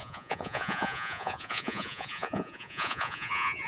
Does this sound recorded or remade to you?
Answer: remade